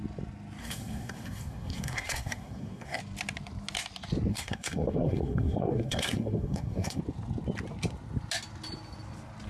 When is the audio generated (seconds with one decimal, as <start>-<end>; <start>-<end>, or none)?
0.6-3.0; 4.3-7.0

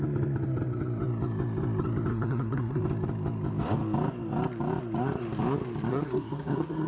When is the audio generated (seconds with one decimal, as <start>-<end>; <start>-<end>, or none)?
2.1-2.8; 5.9-6.9

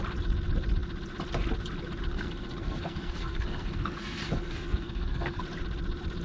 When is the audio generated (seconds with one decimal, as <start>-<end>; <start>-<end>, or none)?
2.1-5.4

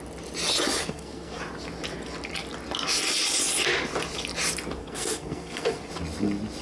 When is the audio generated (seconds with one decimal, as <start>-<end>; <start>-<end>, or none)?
0.8-1.4; 4.8-5.9

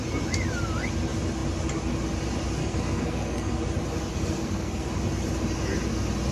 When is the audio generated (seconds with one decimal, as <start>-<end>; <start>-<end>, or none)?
2.6-3.6; 4.1-4.9

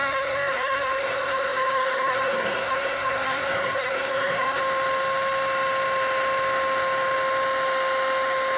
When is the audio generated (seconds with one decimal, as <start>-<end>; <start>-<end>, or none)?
0.0-4.6